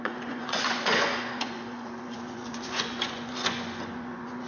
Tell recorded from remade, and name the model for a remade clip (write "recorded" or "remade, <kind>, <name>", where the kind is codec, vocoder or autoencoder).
remade, vocoder, Vocos